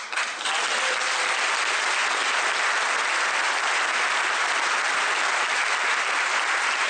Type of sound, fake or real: real